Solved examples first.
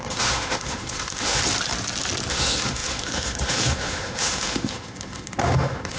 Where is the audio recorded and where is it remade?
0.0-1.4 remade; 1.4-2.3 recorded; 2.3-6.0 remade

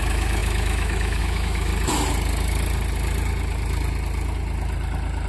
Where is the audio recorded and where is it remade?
0.0-1.7 remade; 1.7-5.3 recorded